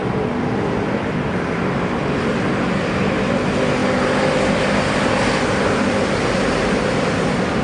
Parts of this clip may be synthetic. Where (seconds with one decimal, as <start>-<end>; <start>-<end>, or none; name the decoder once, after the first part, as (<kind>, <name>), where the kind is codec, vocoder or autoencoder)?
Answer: 0.0-3.3 (vocoder, BigVGAN v2); 3.8-6.4